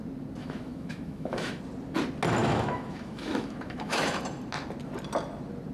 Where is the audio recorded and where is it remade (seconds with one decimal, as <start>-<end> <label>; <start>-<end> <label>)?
0.0-0.4 recorded; 0.4-1.6 remade; 1.6-2.4 recorded; 2.4-4.2 remade; 4.2-5.7 recorded